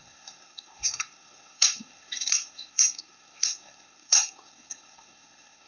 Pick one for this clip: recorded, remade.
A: remade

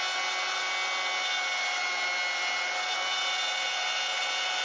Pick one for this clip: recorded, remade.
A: recorded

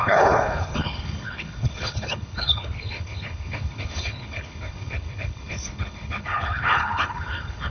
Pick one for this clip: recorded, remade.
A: remade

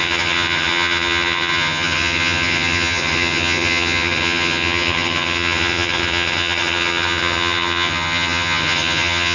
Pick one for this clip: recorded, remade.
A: remade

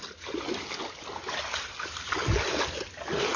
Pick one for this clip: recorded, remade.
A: recorded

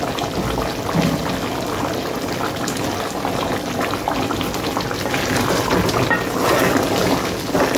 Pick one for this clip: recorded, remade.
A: recorded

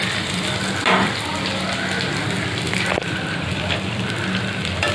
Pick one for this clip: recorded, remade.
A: remade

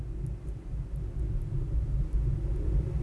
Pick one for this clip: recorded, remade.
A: recorded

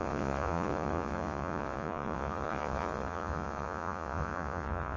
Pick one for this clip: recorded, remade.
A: remade